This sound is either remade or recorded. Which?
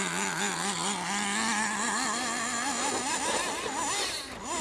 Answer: recorded